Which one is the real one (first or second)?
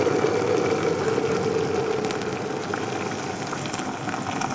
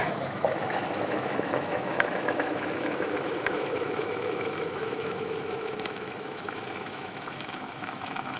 first